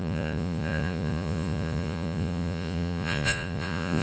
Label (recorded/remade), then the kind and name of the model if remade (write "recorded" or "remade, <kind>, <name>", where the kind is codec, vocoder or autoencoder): remade, vocoder, Vocos